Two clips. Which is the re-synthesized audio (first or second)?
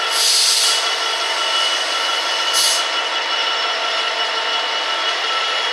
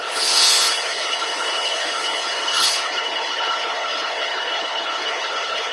second